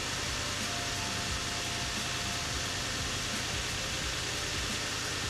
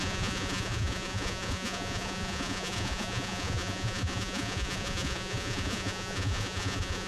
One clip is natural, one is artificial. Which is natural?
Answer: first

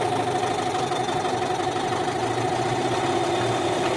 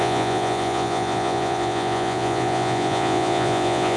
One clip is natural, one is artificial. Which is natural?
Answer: first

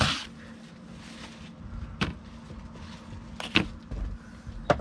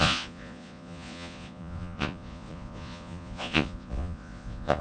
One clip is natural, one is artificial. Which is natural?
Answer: first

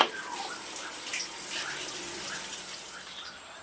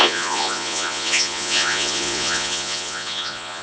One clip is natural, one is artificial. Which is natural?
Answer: first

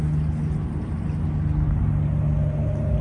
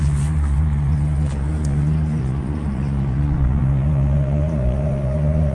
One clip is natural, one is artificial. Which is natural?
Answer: first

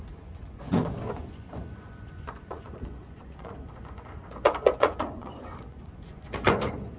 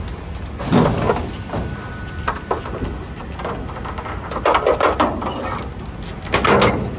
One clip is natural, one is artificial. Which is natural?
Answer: second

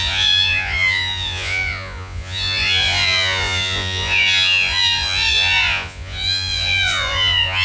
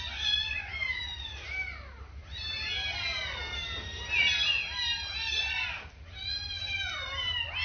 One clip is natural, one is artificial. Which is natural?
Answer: second